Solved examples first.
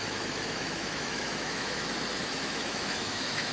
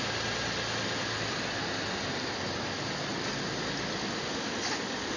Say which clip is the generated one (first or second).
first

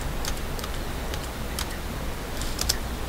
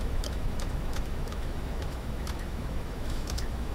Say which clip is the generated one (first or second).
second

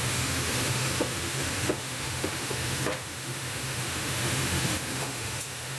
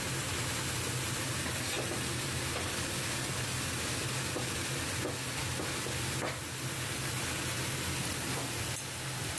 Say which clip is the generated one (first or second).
first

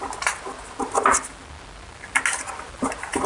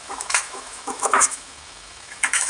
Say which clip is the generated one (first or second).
second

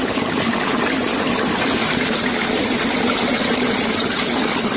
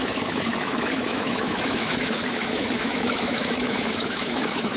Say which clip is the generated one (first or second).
second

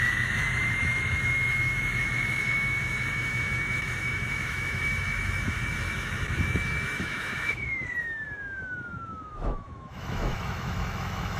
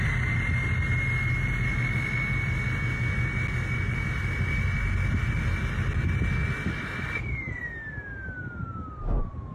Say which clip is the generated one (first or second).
first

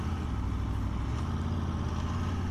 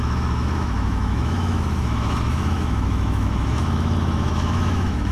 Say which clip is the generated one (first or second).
second